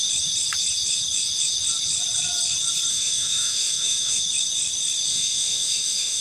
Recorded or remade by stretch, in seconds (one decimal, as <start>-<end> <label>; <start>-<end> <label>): 0.0-2.9 recorded; 2.9-4.2 remade; 4.2-5.1 recorded; 5.1-6.2 remade